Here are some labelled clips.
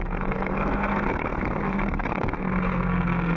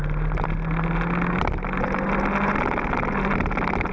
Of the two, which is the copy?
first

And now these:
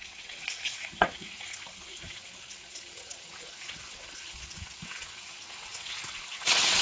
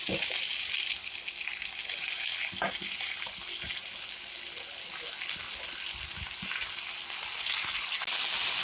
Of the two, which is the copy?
first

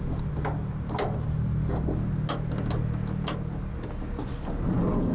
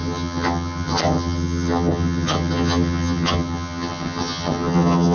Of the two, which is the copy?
second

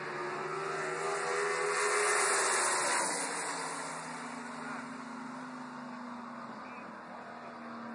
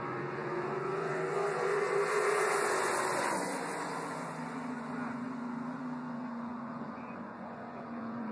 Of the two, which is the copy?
second